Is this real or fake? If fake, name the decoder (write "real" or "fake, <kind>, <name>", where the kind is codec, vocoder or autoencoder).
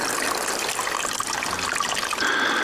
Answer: real